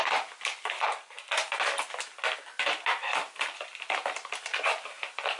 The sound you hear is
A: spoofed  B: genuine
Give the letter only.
B